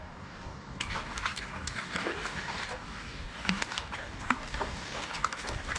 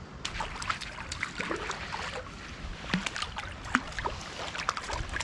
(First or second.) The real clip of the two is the second